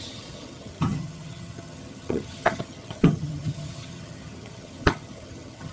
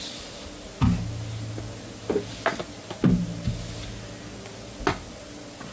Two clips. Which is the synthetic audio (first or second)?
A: first